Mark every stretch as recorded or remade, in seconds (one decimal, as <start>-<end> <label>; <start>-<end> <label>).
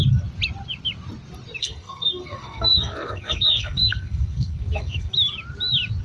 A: 0.0-1.6 recorded; 1.6-5.1 remade; 5.1-6.0 recorded